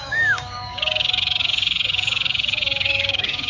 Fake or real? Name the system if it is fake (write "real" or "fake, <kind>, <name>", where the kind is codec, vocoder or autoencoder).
fake, codec, DAC